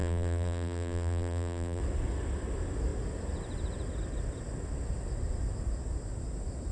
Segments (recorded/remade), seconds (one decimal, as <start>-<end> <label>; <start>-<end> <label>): 0.0-1.8 remade; 1.8-6.7 recorded